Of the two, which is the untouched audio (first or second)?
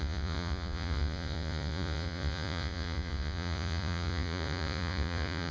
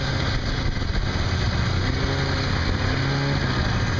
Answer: second